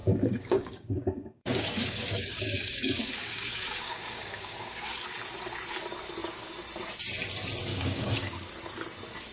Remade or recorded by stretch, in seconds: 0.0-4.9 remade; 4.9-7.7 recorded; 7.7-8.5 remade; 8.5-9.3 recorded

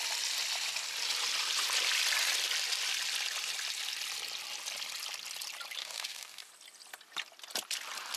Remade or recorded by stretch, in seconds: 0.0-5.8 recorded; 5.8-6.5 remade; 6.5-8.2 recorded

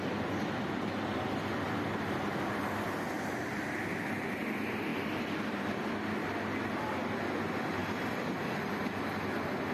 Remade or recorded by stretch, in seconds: 0.0-9.7 recorded